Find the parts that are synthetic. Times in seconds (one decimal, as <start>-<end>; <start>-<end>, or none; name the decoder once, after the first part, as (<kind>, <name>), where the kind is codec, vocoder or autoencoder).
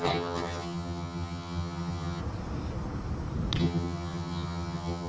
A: 0.0-2.2 (vocoder, HiFi-GAN); 3.6-5.1